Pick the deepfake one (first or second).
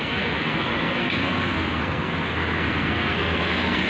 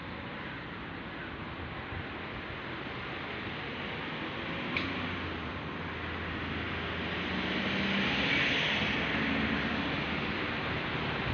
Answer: first